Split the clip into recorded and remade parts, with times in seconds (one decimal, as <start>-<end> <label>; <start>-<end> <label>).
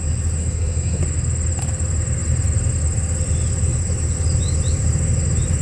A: 0.0-0.4 recorded; 0.4-1.0 remade; 1.0-5.6 recorded